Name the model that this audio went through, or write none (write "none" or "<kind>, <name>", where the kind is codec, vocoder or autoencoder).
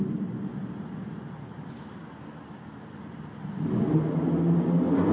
none